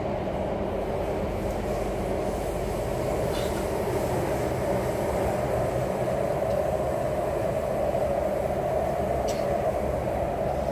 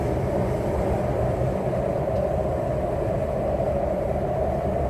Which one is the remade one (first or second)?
second